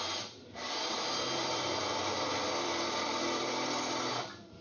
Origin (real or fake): fake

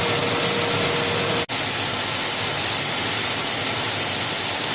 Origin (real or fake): real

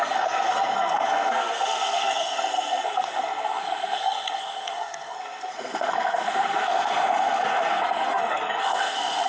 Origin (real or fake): fake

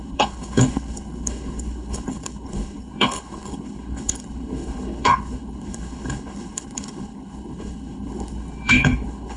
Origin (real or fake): fake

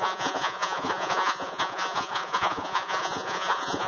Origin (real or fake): fake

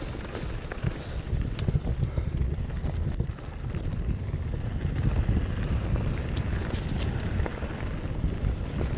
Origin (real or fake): real